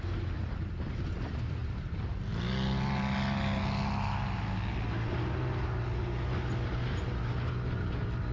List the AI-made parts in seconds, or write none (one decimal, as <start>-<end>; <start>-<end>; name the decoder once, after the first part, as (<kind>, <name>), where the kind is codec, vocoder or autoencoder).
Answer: none